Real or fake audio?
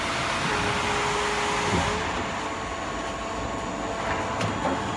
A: real